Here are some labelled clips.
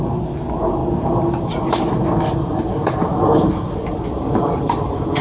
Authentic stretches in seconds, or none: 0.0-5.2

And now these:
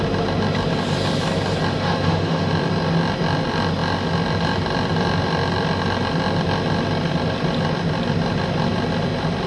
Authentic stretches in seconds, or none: 0.0-1.8; 2.5-9.5

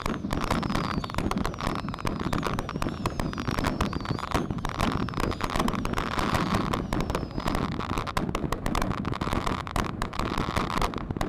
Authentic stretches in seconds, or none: 0.0-8.4; 10.3-11.3